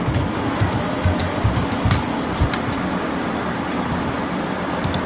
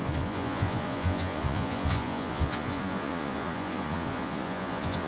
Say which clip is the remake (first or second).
second